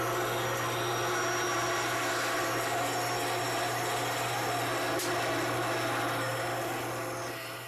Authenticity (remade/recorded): recorded